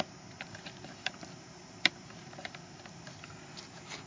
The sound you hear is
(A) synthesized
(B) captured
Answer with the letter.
A